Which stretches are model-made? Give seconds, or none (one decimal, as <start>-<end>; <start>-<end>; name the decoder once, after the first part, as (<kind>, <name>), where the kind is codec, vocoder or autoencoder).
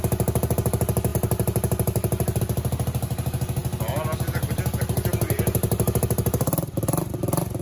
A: none